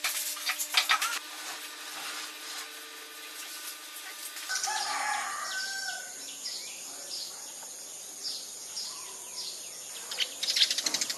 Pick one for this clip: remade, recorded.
recorded